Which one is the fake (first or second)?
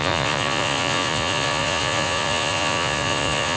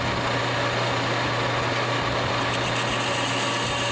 first